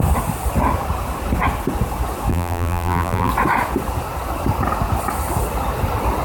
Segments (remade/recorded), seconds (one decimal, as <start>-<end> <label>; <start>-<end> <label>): 0.0-2.3 recorded; 2.3-3.3 remade; 3.3-6.2 recorded